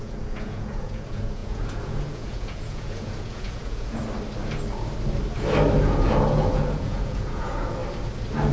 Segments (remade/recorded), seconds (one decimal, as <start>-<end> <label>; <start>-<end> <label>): 0.0-4.0 remade; 4.0-5.8 recorded; 5.8-7.8 remade; 7.8-8.5 recorded